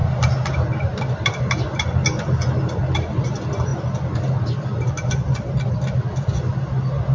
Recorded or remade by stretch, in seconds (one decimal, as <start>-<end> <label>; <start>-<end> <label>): 0.0-1.4 remade; 1.4-7.1 recorded